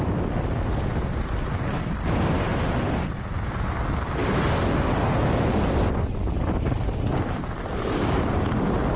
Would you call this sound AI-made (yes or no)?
no